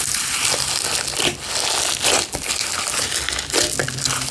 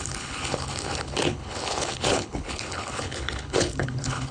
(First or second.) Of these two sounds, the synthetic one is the second